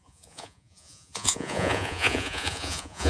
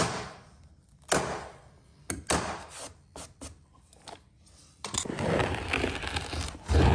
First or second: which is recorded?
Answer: second